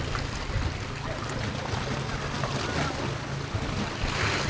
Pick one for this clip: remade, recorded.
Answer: recorded